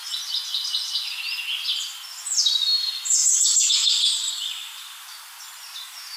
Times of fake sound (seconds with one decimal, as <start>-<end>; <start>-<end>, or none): 3.2-4.3